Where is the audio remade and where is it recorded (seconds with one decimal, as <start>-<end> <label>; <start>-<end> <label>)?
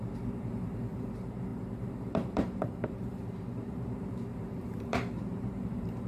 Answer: 0.0-6.1 remade